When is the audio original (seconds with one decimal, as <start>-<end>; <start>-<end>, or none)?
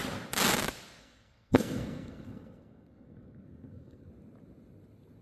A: 0.0-1.0; 4.1-5.2